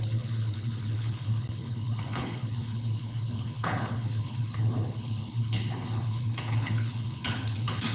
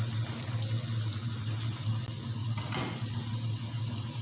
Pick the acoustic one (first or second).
second